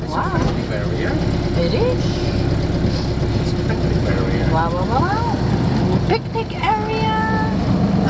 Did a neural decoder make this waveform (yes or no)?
no